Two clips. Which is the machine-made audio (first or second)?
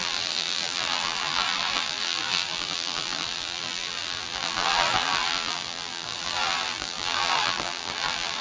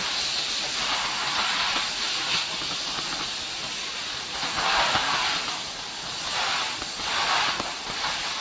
first